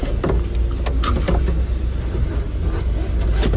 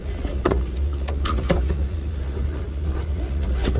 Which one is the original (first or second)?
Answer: first